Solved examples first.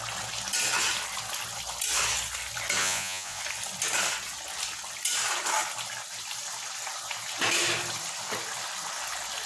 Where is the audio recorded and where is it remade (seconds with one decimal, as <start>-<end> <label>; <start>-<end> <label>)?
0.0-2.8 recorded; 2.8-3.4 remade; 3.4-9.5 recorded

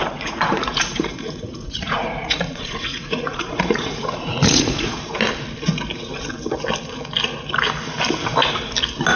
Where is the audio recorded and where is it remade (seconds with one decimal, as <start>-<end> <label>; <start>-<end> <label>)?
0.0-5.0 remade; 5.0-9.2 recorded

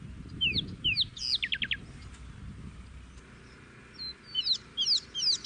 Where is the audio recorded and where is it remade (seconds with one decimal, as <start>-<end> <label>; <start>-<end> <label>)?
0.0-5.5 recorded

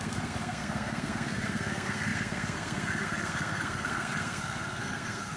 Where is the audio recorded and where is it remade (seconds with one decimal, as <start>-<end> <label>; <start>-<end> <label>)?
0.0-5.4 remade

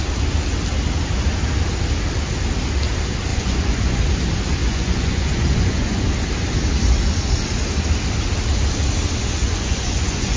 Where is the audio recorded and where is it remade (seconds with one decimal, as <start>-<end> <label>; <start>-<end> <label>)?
0.0-3.3 recorded; 3.3-4.0 remade; 4.0-4.6 recorded; 4.6-6.1 remade; 6.1-9.4 recorded; 9.4-10.4 remade